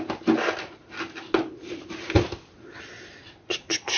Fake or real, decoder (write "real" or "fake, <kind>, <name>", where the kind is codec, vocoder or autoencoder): real